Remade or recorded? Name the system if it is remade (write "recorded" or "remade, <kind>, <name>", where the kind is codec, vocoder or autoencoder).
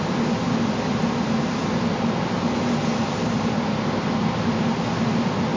recorded